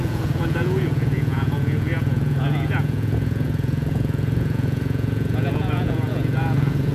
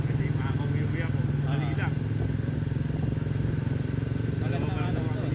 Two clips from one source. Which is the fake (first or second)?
first